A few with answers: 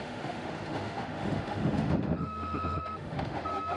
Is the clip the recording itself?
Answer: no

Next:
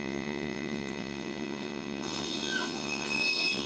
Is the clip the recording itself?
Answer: no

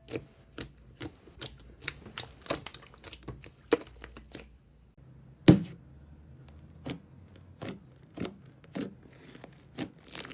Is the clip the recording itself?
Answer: yes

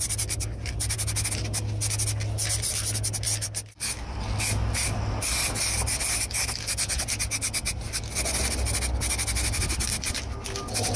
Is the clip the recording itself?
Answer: yes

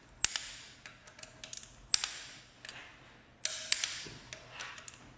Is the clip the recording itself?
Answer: yes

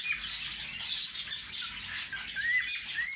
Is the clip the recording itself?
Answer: yes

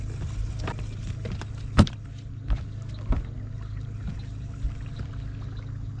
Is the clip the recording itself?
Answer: yes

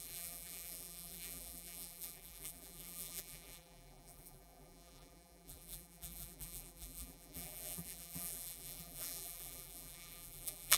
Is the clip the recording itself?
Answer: no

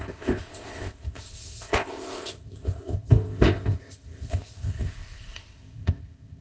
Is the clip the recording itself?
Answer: no